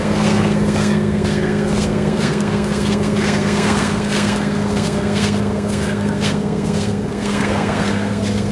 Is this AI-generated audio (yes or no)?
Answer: yes